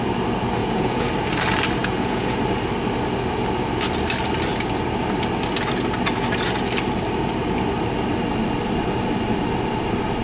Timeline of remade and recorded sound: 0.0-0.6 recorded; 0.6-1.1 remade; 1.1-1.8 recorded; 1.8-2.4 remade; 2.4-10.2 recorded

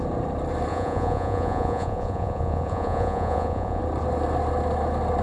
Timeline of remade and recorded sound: 0.0-0.7 recorded; 0.7-3.8 remade; 3.8-5.2 recorded

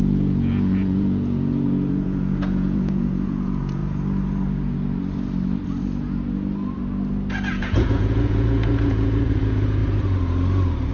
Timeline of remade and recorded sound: 0.0-3.8 remade; 3.8-7.5 recorded; 7.5-9.8 remade; 9.8-10.9 recorded

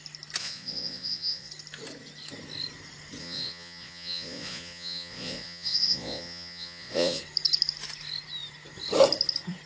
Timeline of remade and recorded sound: 0.0-0.4 recorded; 0.4-1.5 remade; 1.5-3.2 recorded; 3.2-7.2 remade; 7.2-9.7 recorded

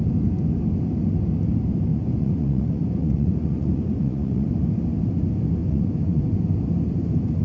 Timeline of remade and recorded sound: 0.0-1.9 recorded; 1.9-4.5 remade; 4.5-5.6 recorded; 5.6-6.2 remade; 6.2-7.4 recorded